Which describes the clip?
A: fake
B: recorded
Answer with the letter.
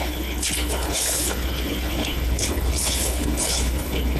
A